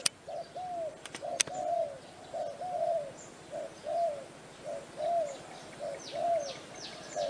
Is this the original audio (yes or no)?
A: yes